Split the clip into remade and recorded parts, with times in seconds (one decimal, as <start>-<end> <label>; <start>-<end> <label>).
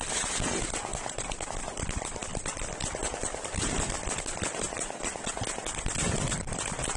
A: 0.0-7.0 recorded